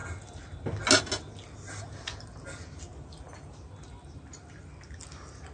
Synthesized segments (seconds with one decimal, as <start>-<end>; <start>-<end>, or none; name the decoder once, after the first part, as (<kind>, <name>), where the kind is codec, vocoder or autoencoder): none